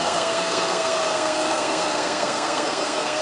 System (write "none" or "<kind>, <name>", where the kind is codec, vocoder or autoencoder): codec, SNAC